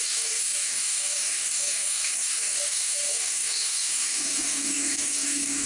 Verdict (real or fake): fake